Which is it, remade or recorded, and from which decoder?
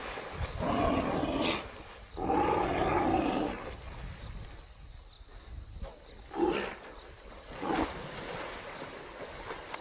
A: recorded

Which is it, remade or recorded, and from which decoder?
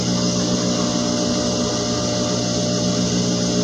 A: recorded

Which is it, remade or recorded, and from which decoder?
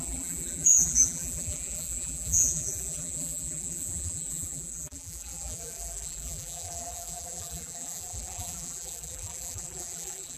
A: remade, vocoder, BigVGAN v2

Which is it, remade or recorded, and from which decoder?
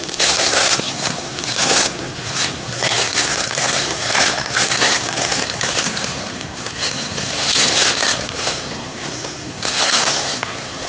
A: remade, codec, SNAC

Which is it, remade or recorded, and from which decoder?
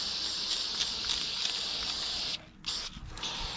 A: recorded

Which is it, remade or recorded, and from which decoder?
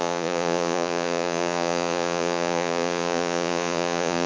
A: remade, vocoder, Vocos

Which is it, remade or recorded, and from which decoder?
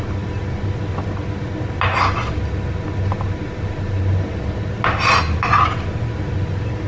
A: recorded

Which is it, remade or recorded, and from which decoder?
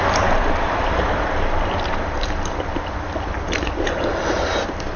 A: remade, vocoder, BigVGAN v2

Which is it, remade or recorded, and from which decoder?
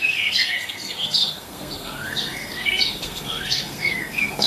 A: remade, codec, SNAC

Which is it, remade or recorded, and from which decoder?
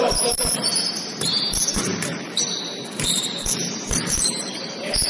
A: remade, vocoder, BigVGAN v2